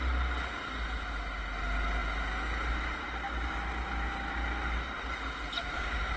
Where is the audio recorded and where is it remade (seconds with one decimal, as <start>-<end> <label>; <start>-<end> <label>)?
0.0-5.6 recorded; 5.6-6.2 remade